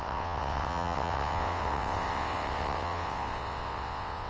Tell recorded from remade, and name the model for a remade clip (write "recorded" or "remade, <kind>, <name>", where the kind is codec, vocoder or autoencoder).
remade, vocoder, WaveNeXt